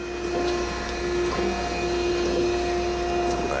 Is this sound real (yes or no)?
yes